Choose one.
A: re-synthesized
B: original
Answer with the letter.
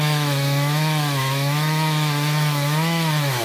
A